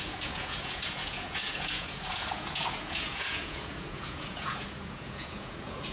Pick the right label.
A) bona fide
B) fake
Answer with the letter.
B